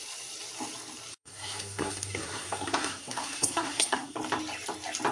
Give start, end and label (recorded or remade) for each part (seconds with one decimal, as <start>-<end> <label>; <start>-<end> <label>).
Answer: 0.0-1.1 recorded; 1.1-4.2 remade; 4.2-5.1 recorded